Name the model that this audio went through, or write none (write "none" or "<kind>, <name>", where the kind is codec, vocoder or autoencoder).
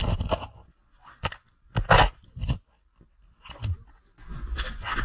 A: none